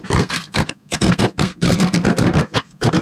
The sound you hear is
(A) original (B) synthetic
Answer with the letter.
B